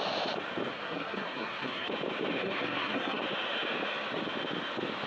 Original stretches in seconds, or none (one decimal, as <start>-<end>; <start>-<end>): 0.0-0.7; 1.9-2.4; 3.2-5.1